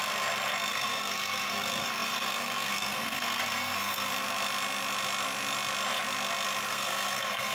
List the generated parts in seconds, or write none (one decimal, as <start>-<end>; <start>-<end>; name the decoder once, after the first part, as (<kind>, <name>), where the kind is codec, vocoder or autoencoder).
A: 0.7-4.1 (codec, SNAC); 6.7-7.5